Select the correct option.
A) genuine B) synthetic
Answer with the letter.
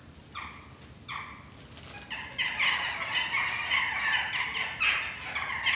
A